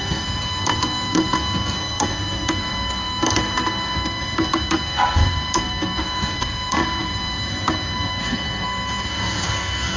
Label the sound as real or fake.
fake